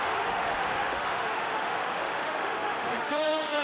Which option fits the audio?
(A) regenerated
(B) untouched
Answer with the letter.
A